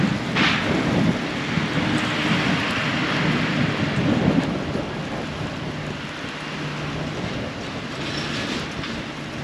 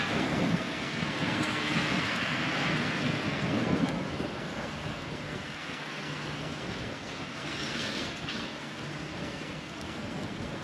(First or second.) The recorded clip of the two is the first